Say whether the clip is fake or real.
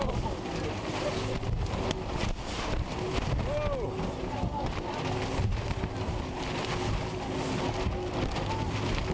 real